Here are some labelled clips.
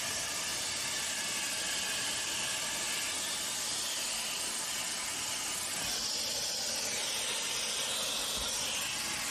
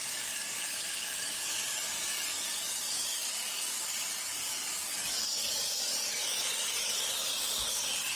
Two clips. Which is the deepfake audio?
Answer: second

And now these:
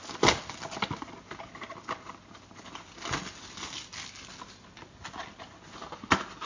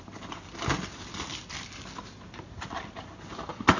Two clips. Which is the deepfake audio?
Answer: second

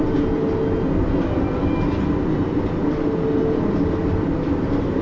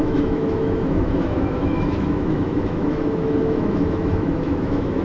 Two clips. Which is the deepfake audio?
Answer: second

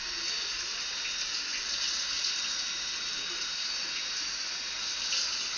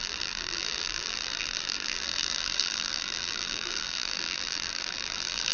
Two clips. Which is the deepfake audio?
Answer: second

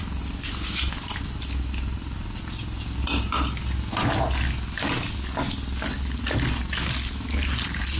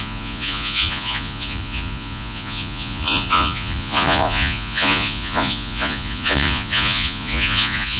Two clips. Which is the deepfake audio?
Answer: second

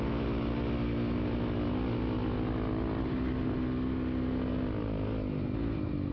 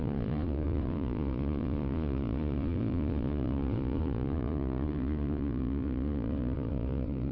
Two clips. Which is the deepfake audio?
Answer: second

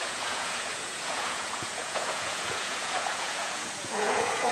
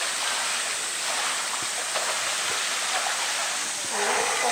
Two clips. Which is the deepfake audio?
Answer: first